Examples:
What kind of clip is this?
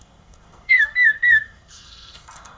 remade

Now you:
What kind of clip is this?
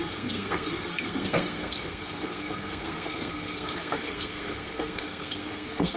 remade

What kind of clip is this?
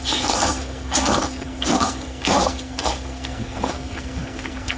remade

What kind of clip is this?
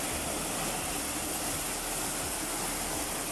recorded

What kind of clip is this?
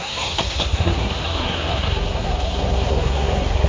remade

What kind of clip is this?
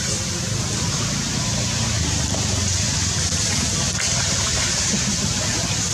recorded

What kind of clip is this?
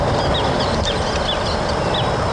recorded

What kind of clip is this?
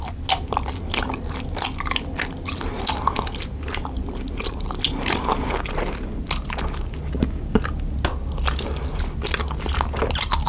recorded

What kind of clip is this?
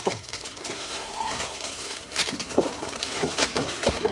remade